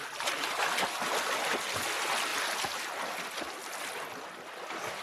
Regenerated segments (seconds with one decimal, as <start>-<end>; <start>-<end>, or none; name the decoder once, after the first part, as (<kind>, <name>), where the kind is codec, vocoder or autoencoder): none